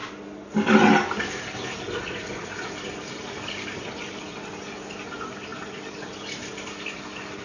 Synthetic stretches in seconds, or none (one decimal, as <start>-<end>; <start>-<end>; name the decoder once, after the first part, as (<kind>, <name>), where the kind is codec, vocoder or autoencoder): none